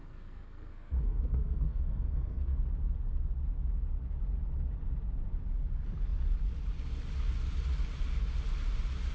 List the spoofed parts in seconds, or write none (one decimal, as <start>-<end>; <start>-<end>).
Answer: 0.0-2.6